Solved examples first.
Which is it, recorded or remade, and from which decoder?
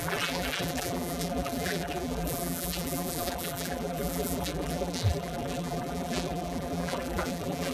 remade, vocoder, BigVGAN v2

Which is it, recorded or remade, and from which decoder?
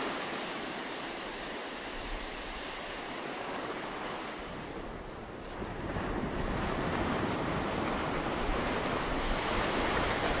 remade, vocoder, BigVGAN v2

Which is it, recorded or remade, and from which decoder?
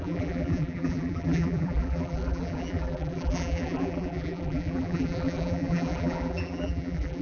remade, vocoder, BigVGAN v2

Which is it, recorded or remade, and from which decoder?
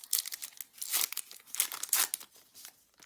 recorded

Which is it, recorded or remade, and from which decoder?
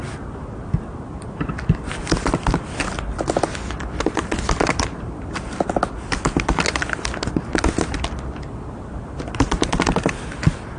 recorded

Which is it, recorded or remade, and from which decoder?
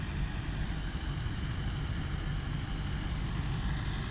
remade, vocoder, BigVGAN v2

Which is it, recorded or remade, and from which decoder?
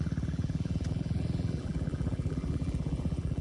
remade, vocoder, BigVGAN v2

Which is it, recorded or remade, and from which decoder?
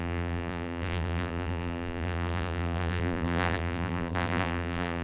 remade, vocoder, BigVGAN v2